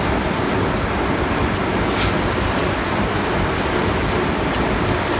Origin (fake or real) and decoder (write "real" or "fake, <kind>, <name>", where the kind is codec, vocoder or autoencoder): real